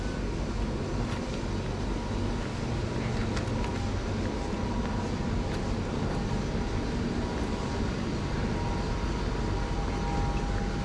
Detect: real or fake real